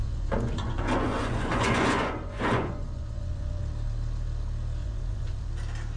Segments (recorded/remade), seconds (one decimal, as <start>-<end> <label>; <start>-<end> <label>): 0.0-3.6 remade; 3.6-4.8 recorded; 4.8-5.5 remade; 5.5-6.0 recorded